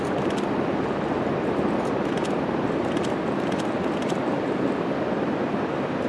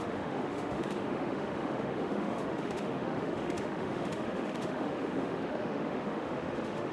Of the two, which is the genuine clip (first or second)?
first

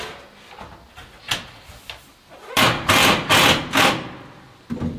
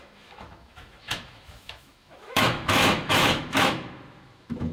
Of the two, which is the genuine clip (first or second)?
first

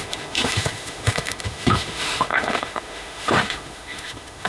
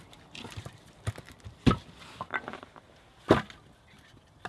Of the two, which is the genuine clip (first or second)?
second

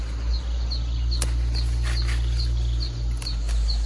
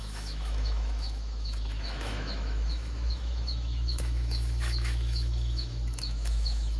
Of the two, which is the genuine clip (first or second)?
first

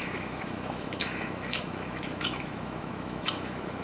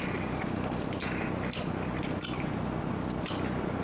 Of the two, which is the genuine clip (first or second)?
second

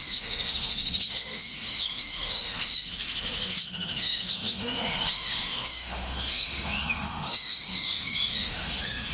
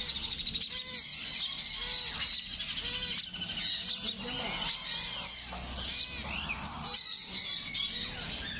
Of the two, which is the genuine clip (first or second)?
second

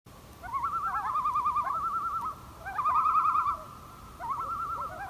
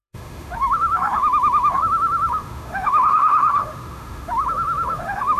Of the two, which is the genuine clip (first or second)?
first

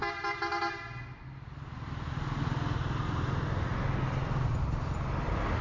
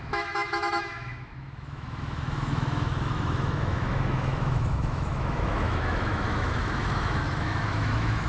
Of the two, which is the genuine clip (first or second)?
first